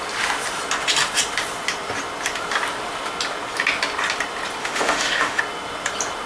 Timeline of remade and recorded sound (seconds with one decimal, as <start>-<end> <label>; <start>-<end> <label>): 0.0-4.6 recorded; 4.6-5.4 remade; 5.4-6.3 recorded